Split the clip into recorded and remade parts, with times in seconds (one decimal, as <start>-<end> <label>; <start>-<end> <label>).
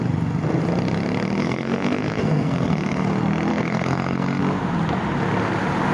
0.0-1.4 recorded; 1.4-3.1 remade; 3.1-3.5 recorded; 3.5-4.4 remade; 4.4-5.9 recorded